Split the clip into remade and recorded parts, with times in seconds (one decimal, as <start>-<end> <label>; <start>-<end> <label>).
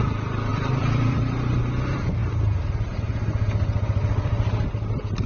0.0-0.5 recorded; 0.5-1.6 remade; 1.6-2.2 recorded; 2.2-3.0 remade; 3.0-4.0 recorded; 4.0-4.5 remade; 4.5-5.3 recorded